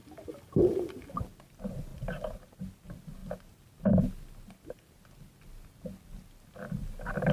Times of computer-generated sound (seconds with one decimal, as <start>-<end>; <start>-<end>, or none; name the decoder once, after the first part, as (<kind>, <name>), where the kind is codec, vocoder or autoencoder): 1.9-2.6 (vocoder, BigVGAN v2); 3.2-4.0